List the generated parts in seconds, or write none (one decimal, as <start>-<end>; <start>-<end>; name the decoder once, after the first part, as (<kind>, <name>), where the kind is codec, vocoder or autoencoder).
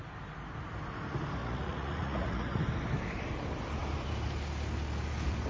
1.4-2.6 (vocoder, Vocos)